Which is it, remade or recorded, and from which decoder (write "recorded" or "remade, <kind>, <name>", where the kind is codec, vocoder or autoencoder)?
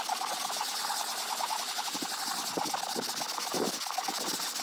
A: recorded